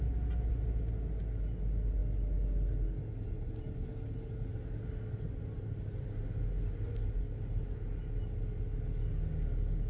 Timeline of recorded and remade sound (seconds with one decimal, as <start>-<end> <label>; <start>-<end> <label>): 0.0-9.9 recorded